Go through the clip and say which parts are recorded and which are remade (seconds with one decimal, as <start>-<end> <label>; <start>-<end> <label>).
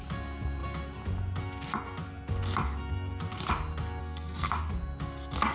0.0-4.0 recorded; 4.0-4.5 remade; 4.5-5.5 recorded